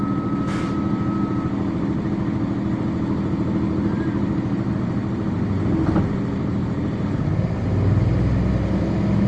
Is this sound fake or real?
real